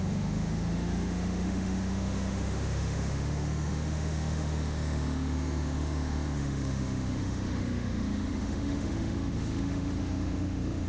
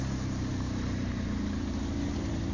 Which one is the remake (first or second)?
first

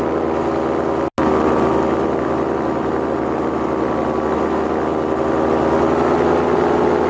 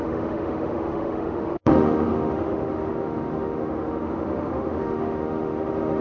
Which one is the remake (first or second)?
second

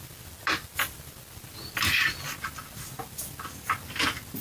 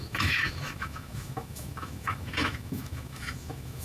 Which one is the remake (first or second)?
second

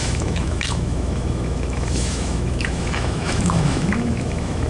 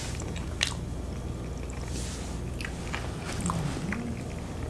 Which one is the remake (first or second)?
first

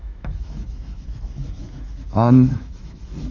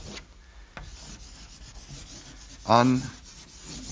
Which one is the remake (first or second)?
first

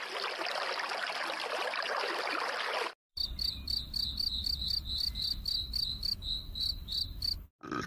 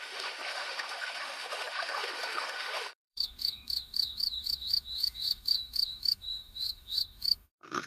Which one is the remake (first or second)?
second